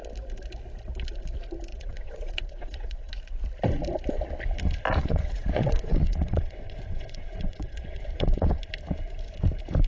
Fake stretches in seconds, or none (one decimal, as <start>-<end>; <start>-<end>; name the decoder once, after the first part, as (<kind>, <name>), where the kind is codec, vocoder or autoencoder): 1.7-3.1 (vocoder, WaveNeXt); 5.0-8.6